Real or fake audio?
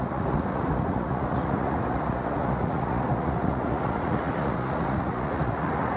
fake